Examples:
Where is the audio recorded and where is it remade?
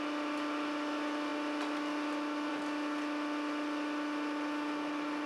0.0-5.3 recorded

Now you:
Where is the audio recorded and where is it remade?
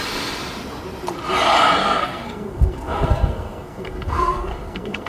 0.0-1.8 recorded; 1.8-5.1 remade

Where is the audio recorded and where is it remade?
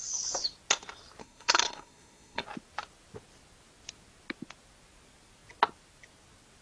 0.0-1.2 recorded; 1.2-2.4 remade; 2.4-6.6 recorded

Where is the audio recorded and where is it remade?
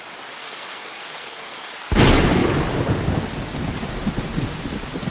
0.0-0.4 recorded; 0.4-1.7 remade; 1.7-5.1 recorded